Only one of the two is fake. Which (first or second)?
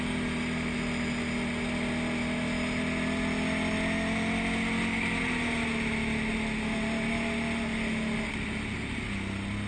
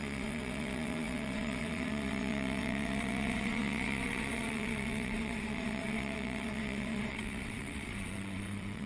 second